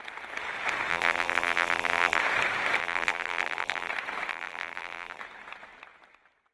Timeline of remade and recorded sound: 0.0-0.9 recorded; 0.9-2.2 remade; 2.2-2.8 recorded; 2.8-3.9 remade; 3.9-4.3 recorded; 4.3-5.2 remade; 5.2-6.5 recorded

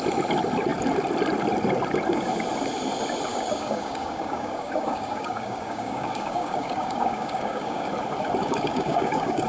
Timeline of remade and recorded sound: 0.0-3.3 recorded; 3.3-7.9 remade; 7.9-8.4 recorded; 8.4-9.5 remade

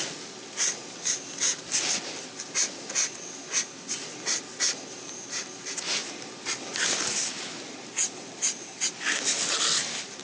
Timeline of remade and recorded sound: 0.0-10.2 recorded

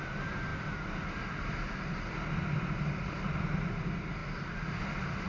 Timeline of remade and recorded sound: 0.0-5.3 recorded

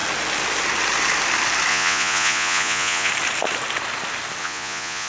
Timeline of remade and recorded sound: 0.0-1.7 recorded; 1.7-3.1 remade; 3.1-4.4 recorded; 4.4-5.1 remade

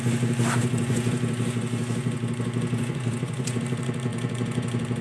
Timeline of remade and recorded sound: 0.0-0.6 recorded; 0.6-3.6 remade; 3.6-4.1 recorded; 4.1-5.0 remade